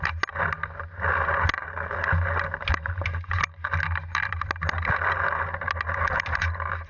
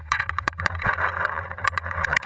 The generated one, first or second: second